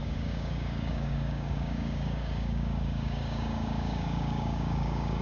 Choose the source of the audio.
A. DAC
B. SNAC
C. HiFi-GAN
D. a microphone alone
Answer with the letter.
A